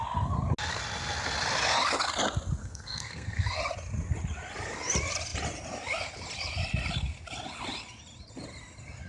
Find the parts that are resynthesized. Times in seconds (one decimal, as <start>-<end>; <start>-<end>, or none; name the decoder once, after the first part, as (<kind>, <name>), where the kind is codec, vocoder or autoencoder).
2.6-3.6 (codec, SNAC)